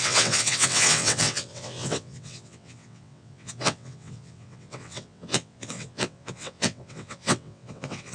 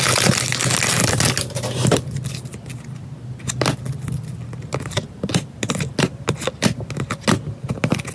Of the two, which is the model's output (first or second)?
first